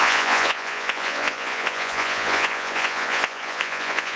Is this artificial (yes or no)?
yes